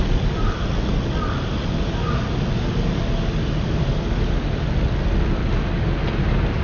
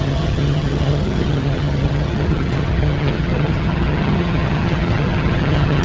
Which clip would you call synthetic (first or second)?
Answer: second